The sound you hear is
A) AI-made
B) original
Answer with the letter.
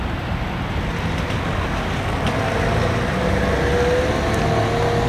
B